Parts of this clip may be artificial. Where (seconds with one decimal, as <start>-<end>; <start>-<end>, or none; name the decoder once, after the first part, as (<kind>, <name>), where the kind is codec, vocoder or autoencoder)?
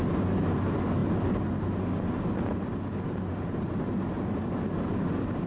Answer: none